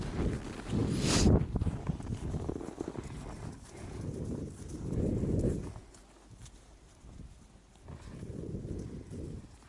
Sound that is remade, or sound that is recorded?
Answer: recorded